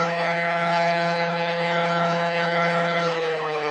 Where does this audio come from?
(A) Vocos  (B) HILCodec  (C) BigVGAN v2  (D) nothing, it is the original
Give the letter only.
B